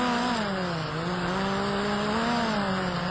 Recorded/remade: recorded